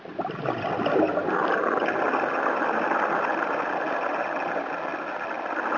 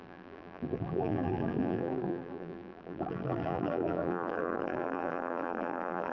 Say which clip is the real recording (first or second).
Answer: first